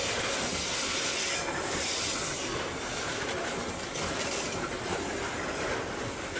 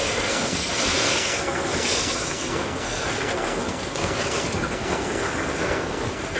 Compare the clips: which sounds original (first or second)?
first